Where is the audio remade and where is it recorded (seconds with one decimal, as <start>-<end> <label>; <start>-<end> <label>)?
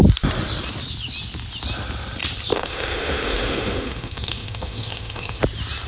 0.0-2.5 recorded; 2.5-5.4 remade; 5.4-5.9 recorded